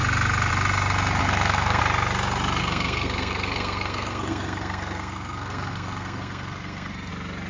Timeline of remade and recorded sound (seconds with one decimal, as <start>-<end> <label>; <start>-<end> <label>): 0.0-1.2 recorded; 1.2-1.8 remade; 1.8-2.6 recorded; 2.6-7.1 remade; 7.1-7.5 recorded